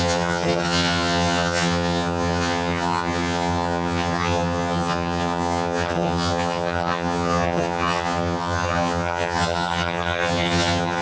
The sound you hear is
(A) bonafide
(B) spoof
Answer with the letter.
B